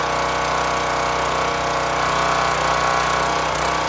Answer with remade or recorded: recorded